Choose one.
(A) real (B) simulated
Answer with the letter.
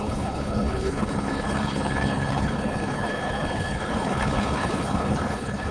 B